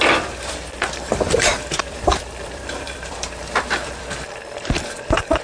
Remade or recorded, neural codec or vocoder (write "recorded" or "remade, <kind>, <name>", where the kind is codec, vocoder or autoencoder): remade, vocoder, BigVGAN v2